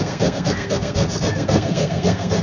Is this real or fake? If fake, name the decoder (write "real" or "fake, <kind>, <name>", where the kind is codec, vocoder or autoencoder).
fake, codec, SNAC